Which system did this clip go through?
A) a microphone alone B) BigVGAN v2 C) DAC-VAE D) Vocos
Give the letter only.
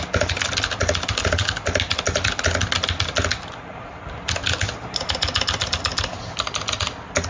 A